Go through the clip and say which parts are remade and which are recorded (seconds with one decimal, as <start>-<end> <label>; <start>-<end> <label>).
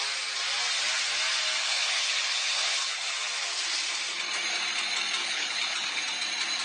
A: 0.0-1.6 recorded; 1.6-3.1 remade; 3.1-5.2 recorded; 5.2-6.0 remade; 6.0-6.6 recorded